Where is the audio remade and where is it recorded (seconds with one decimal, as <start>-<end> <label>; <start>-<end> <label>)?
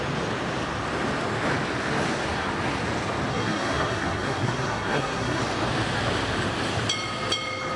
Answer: 0.0-3.3 recorded; 3.3-5.4 remade; 5.4-7.8 recorded